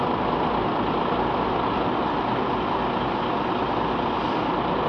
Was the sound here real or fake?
real